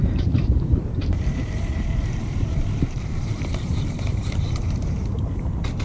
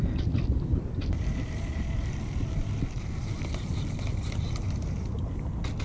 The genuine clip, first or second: second